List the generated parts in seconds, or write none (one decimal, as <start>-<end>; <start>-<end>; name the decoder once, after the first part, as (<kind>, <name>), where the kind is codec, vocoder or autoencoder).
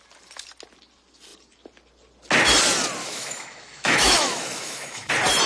3.0-5.1 (autoencoder, DAC-VAE)